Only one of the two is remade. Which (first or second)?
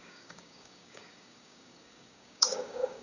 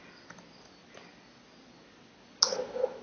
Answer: first